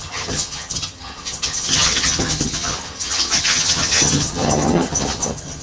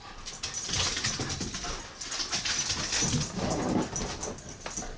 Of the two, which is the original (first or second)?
second